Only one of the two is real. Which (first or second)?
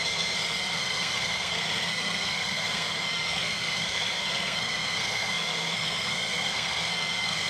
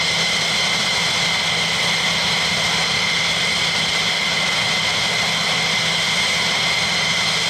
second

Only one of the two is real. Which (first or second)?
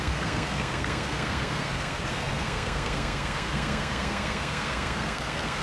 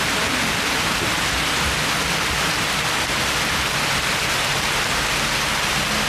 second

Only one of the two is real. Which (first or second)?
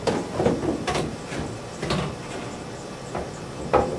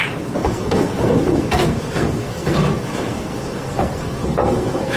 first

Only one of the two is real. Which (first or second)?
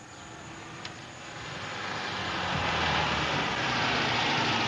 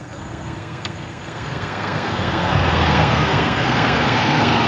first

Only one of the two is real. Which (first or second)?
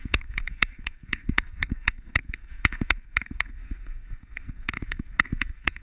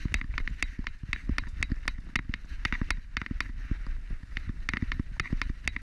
second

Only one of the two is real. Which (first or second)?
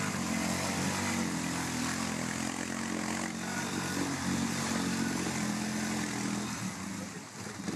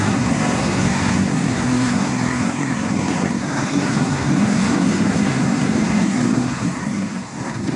first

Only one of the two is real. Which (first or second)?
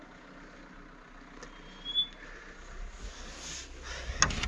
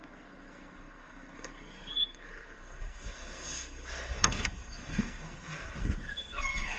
first